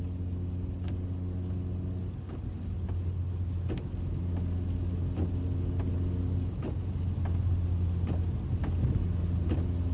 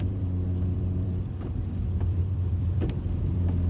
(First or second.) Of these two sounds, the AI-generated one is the second